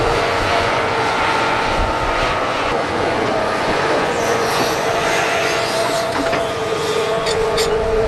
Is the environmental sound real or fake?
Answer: fake